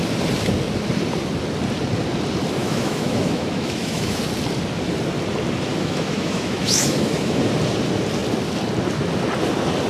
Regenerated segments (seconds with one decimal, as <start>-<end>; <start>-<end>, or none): 2.6-4.2; 5.7-7.4